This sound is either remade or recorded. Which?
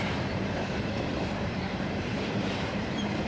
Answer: remade